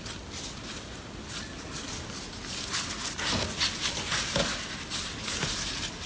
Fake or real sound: real